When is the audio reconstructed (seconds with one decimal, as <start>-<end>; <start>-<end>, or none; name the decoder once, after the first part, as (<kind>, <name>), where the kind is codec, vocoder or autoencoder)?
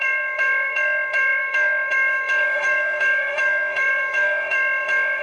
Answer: 0.0-5.2 (autoencoder, DAC-VAE)